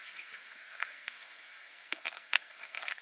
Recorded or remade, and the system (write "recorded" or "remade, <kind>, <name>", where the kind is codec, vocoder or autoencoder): remade, codec, SNAC